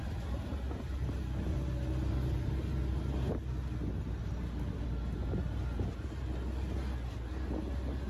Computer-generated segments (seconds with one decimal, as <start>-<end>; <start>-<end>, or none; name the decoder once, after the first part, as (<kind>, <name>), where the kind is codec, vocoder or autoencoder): none